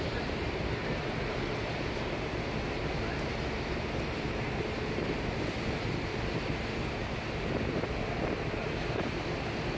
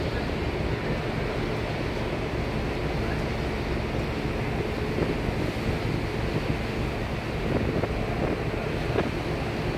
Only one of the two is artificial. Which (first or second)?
first